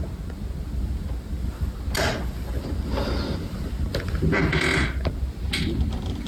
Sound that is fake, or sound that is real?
real